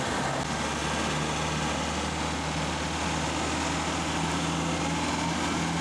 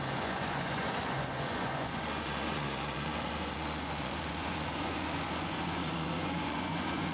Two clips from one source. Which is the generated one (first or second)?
second